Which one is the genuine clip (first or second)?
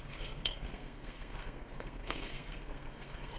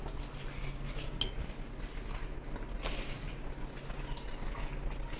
second